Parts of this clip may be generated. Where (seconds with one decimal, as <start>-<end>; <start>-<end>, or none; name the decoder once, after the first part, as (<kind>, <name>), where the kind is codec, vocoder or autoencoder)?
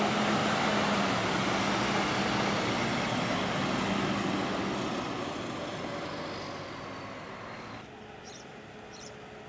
none